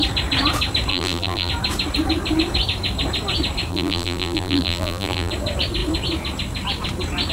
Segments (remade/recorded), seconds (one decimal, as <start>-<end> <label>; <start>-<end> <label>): 0.0-0.9 recorded; 0.9-1.5 remade; 1.5-3.7 recorded; 3.7-5.3 remade; 5.3-7.3 recorded